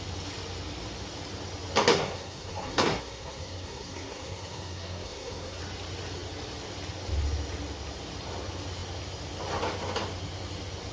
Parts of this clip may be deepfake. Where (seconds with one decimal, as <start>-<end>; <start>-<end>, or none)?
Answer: 1.9-5.6